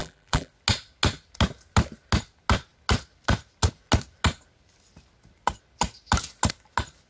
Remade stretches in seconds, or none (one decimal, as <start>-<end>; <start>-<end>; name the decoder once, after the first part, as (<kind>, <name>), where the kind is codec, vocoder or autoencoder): 0.0-0.5 (vocoder, BigVGAN v2)